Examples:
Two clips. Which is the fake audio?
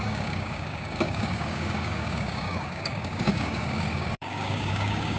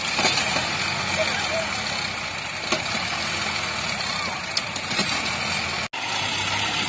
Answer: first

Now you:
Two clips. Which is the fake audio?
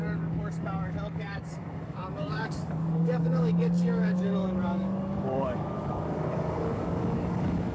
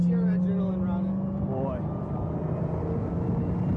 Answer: first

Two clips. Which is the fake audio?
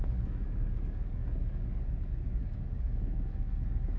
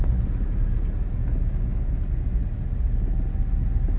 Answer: first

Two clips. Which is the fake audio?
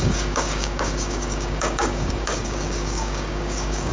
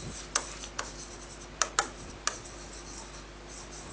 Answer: first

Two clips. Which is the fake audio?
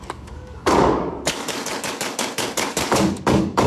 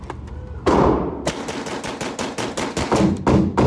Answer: first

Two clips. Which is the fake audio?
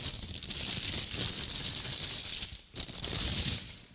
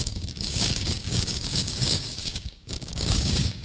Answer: second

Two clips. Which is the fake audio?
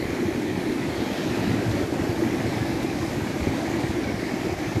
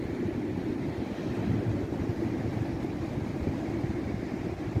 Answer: first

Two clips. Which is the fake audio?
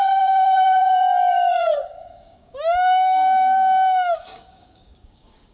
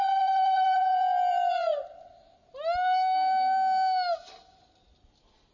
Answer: first